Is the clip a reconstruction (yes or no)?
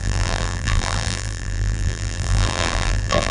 yes